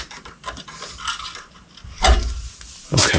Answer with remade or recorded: recorded